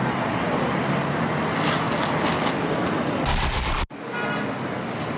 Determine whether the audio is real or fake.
real